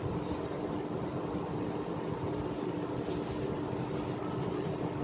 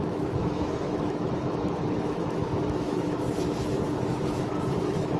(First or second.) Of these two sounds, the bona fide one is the first